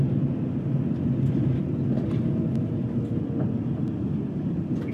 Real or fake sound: real